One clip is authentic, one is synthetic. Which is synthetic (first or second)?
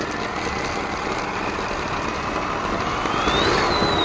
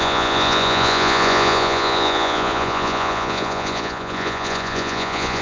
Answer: second